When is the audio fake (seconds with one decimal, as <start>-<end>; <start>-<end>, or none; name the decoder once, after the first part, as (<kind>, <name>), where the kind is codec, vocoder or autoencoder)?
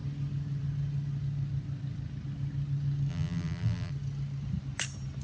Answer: 3.1-3.9 (vocoder, BigVGAN v2)